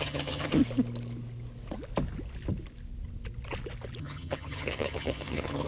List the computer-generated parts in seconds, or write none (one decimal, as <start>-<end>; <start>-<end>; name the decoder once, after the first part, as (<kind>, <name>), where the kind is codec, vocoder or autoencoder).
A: 0.0-0.6 (vocoder, HiFi-GAN); 4.0-5.7